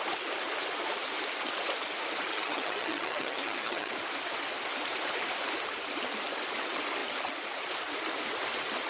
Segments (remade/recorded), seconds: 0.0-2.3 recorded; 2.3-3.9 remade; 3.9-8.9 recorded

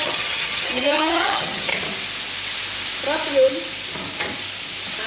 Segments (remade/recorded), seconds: 0.0-1.7 remade; 1.7-5.1 recorded

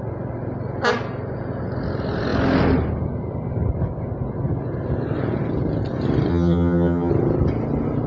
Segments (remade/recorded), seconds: 0.0-6.3 recorded; 6.3-7.1 remade; 7.1-8.1 recorded